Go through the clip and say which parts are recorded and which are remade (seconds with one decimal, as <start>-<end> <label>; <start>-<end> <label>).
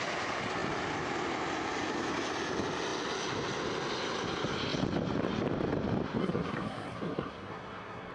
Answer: 0.0-6.2 recorded; 6.2-8.1 remade